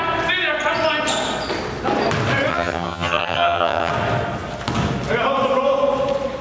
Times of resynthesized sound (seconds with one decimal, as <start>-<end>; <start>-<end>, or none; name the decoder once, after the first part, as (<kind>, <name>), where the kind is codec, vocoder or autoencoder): 2.5-3.9 (vocoder, HiFi-GAN)